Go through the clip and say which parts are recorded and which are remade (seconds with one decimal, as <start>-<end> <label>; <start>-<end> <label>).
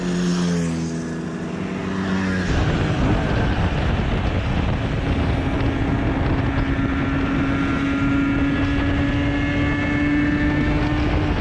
0.0-11.4 recorded